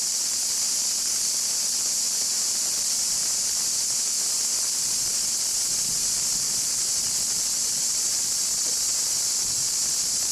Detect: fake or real real